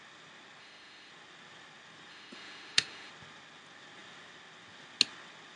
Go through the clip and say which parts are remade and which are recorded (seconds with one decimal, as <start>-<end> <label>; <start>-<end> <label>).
0.0-0.6 recorded; 0.6-1.1 remade; 1.1-2.1 recorded; 2.1-3.1 remade; 3.1-5.6 recorded